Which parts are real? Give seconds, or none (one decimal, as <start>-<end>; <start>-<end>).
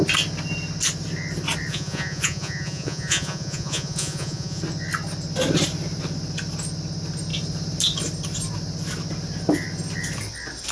0.0-1.7; 4.6-10.7